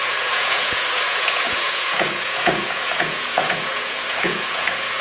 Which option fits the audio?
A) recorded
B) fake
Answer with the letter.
B